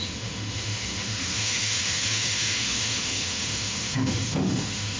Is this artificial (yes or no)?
yes